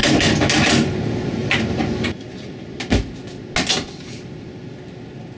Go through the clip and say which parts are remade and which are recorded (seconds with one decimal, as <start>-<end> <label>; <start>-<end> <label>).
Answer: 0.0-5.4 recorded